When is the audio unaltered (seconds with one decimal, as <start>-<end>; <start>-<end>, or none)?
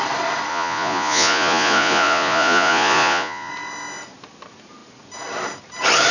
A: 0.0-0.5; 3.5-6.1